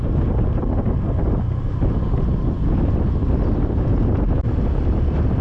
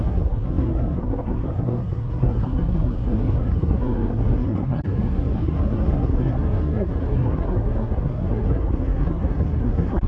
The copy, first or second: second